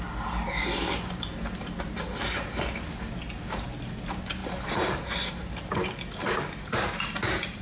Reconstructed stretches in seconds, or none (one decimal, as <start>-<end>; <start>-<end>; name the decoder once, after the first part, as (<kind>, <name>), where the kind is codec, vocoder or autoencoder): none